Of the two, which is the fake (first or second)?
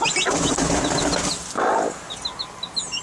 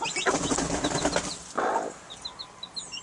second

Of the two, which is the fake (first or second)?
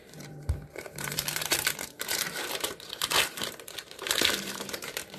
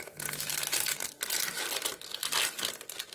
first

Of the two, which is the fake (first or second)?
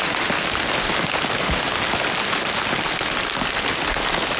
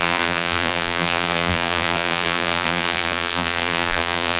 second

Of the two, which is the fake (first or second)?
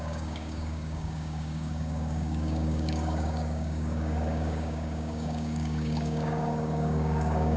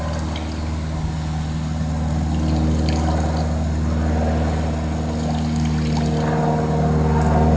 first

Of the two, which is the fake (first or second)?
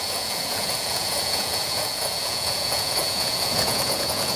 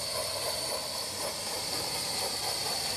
first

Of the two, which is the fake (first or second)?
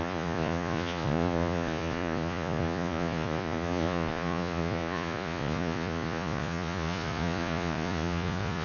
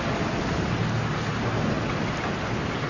first